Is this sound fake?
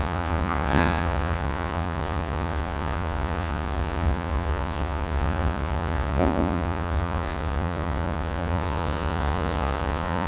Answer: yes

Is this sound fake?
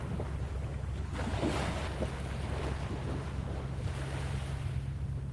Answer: no